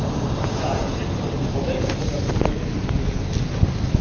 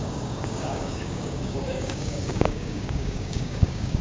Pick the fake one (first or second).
second